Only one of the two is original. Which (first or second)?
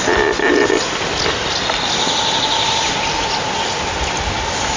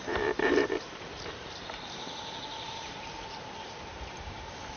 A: first